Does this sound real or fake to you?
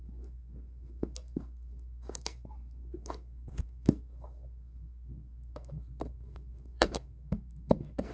fake